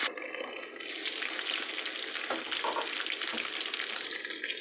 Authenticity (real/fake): real